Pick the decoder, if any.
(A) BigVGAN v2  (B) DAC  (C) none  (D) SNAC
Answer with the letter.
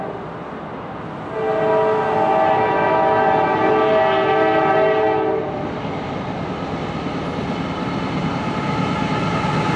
C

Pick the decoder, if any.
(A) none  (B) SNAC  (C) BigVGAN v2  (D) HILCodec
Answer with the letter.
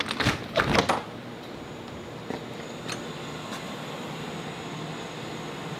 A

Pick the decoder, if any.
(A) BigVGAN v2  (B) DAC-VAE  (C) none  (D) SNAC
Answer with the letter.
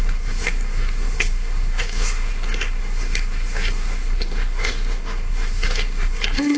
D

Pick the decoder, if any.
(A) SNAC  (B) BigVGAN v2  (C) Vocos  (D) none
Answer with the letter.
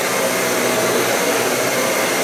D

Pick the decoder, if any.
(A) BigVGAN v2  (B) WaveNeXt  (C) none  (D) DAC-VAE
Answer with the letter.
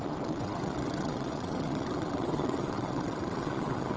B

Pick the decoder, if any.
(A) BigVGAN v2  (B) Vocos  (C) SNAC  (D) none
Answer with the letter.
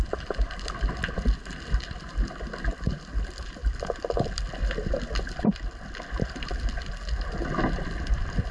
D